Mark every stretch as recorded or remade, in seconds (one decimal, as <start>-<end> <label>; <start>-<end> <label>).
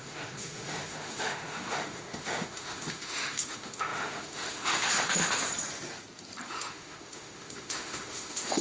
0.0-5.5 remade; 5.5-6.5 recorded; 6.5-8.6 remade